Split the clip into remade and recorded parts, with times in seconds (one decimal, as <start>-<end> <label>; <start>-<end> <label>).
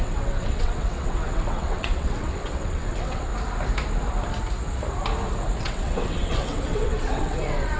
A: 0.0-3.3 remade; 3.3-5.6 recorded; 5.6-7.8 remade